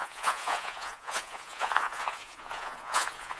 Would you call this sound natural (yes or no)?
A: no